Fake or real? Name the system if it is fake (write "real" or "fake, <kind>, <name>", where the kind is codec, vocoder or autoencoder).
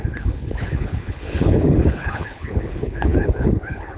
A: fake, codec, HILCodec